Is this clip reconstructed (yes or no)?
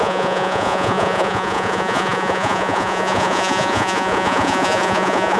yes